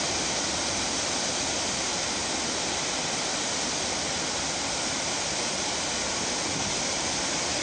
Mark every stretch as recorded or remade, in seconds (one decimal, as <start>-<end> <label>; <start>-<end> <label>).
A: 0.0-7.6 recorded